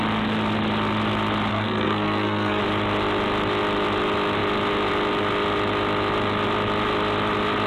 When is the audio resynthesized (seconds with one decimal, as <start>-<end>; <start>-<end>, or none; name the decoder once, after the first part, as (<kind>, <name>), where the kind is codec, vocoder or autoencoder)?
1.5-2.6 (codec, SNAC)